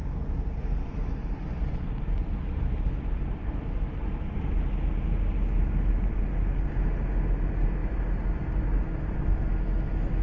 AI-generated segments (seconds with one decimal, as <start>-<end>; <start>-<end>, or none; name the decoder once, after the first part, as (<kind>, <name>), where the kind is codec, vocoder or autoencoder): none